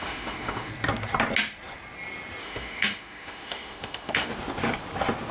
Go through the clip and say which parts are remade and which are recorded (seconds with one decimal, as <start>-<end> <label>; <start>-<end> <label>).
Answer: 0.0-0.7 remade; 0.7-2.4 recorded; 2.4-4.3 remade; 4.3-5.3 recorded